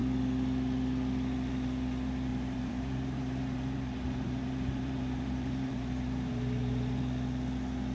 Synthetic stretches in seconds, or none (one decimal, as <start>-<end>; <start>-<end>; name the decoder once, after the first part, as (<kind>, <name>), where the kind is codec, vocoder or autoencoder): 2.3-7.0 (vocoder, BigVGAN v2)